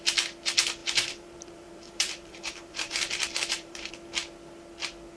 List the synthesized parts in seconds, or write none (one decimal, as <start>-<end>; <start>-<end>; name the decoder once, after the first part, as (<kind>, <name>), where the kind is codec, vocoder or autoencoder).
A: 0.8-3.9 (vocoder, BigVGAN v2)